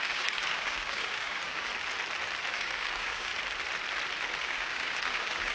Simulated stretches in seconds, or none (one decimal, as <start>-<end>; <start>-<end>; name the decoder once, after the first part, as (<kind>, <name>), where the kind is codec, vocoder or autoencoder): 0.0-1.7 (codec, DAC); 2.5-3.3; 4.4-5.5